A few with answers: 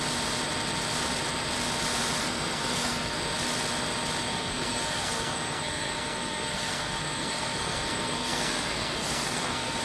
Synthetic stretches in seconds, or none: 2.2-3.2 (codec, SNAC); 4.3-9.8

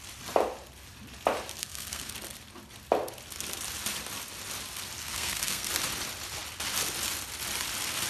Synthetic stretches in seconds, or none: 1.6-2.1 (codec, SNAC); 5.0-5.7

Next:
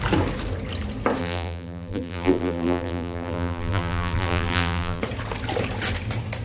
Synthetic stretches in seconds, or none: 1.2-5.0 (vocoder, BigVGAN v2)

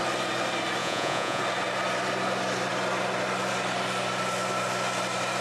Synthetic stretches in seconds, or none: 0.8-1.4 (vocoder, Vocos)

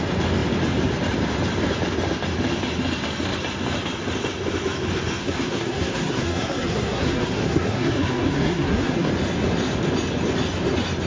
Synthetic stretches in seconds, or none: 5.2-9.1 (codec, SNAC)

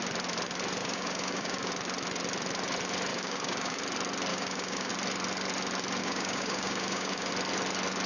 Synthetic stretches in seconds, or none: 0.8-1.7 (codec, DAC); 3.1-3.8; 4.3-4.9; 6.0-7.3

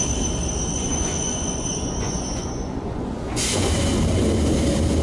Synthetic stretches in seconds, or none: 0.7-3.7 (vocoder, Vocos)